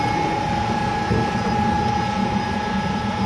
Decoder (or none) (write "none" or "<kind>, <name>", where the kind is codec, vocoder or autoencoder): none